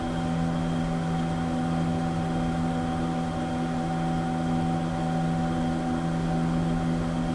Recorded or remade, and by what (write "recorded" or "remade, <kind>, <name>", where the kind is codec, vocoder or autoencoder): recorded